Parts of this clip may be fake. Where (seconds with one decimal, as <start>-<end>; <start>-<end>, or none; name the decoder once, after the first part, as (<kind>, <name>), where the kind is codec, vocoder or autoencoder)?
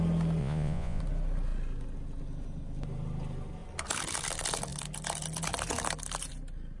0.4-1.0 (vocoder, Vocos)